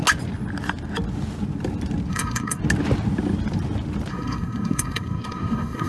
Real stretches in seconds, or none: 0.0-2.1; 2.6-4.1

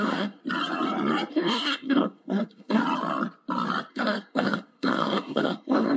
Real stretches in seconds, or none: 0.4-1.3; 2.8-3.9

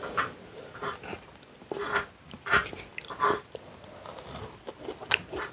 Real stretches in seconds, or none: 0.0-5.5

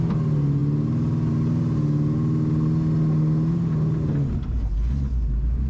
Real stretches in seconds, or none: 0.0-5.7